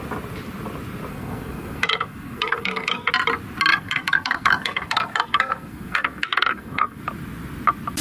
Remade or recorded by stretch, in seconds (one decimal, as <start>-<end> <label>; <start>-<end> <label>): 0.0-1.1 recorded; 1.1-3.1 remade; 3.1-3.7 recorded; 3.7-7.0 remade; 7.0-8.0 recorded